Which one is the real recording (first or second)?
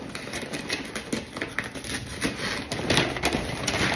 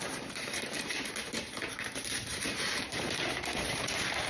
first